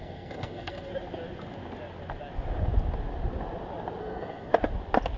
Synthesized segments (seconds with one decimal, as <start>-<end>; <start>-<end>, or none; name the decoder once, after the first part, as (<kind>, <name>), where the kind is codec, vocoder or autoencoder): 0.0-0.9 (codec, SNAC); 4.0-4.5